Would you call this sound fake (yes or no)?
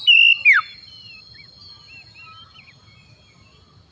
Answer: no